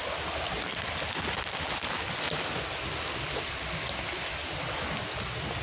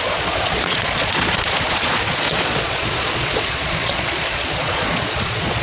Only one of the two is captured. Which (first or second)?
first